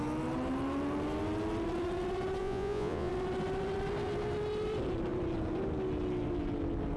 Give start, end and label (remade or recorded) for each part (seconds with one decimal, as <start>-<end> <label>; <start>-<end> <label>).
0.0-2.4 recorded; 2.4-3.1 remade; 3.1-7.0 recorded